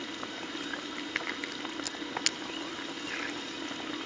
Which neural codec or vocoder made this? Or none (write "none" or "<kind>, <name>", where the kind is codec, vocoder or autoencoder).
none